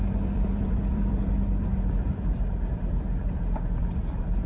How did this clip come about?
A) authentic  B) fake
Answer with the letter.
B